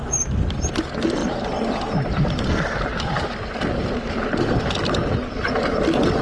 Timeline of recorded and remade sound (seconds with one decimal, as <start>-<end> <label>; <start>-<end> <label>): 0.0-6.2 recorded

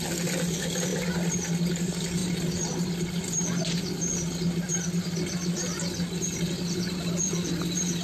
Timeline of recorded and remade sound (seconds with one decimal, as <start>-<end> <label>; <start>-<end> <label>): 0.0-8.0 recorded

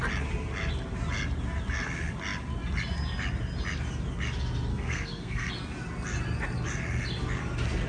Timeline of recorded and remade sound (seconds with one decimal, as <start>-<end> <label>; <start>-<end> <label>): 0.0-4.7 recorded; 4.7-5.5 remade; 5.5-7.9 recorded

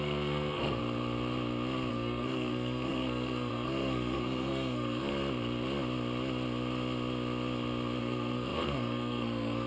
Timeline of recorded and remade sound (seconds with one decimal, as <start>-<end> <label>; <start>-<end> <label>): 0.0-0.8 remade; 0.8-1.9 recorded; 1.9-5.1 remade; 5.1-8.0 recorded; 8.0-9.7 remade

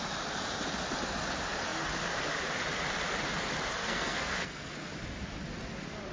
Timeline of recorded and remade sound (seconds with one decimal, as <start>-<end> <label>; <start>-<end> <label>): 0.0-3.8 recorded; 3.8-4.7 remade; 4.7-6.1 recorded